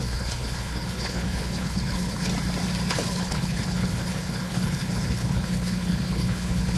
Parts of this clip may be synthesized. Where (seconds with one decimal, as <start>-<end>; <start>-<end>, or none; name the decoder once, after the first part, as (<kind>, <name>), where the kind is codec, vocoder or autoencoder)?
0.0-2.3 (codec, HILCodec); 2.9-6.8